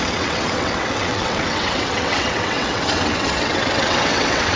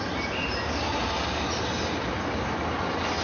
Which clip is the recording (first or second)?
second